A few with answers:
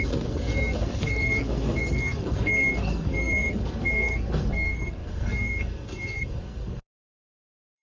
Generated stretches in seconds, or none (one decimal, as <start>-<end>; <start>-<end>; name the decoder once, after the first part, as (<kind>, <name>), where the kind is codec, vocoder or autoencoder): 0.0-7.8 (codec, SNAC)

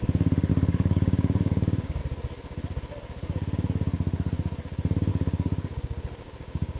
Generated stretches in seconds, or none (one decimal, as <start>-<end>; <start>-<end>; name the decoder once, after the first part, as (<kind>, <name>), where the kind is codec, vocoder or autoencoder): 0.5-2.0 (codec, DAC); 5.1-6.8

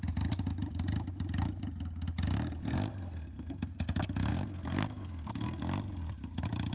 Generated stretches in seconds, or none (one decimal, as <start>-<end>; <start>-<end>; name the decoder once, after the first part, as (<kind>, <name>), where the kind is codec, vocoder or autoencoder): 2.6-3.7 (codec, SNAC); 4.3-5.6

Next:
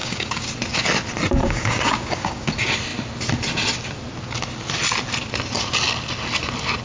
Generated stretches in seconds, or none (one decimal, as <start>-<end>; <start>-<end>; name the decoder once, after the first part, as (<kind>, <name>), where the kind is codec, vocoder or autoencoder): 0.0-0.5 (codec, DAC); 1.4-2.5